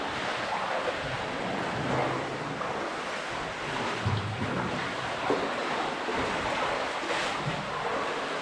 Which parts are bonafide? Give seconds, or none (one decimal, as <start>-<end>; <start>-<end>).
0.0-8.4